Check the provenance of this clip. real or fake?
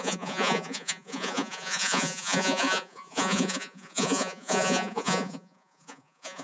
fake